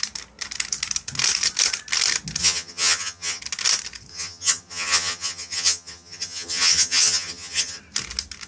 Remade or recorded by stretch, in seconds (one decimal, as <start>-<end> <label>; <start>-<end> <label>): 0.0-2.4 recorded; 2.4-3.4 remade; 3.4-4.1 recorded; 4.1-7.8 remade; 7.8-8.5 recorded

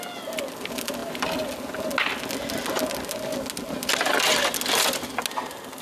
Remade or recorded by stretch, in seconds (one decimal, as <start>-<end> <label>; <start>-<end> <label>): 0.0-5.8 recorded